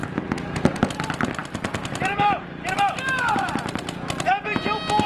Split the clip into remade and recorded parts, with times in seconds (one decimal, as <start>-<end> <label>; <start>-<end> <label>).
0.0-5.1 recorded